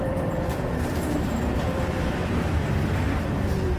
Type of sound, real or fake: fake